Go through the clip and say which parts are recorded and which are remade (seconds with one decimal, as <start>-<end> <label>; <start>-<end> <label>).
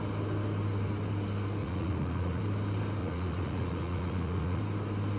0.0-1.6 recorded; 1.6-2.4 remade; 2.4-3.0 recorded; 3.0-4.6 remade; 4.6-5.2 recorded